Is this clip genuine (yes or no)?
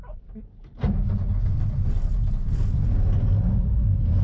yes